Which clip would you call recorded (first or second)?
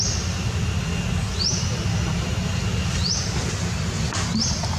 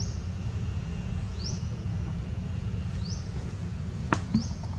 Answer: first